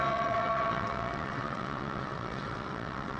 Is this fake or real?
fake